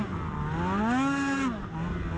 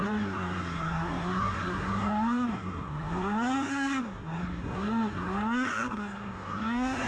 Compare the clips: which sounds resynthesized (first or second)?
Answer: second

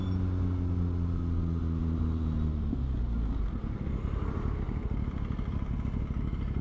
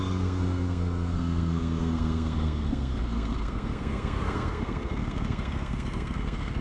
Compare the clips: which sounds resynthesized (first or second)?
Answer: second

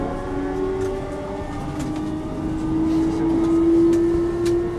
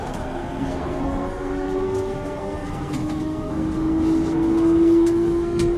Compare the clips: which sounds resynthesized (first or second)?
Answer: second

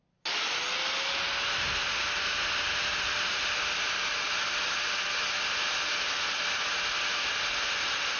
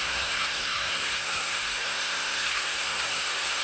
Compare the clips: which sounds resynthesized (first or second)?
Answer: second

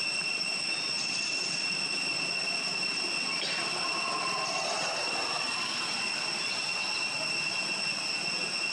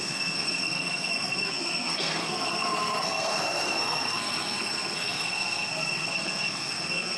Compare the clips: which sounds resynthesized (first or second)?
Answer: second